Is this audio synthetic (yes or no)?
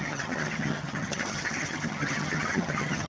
yes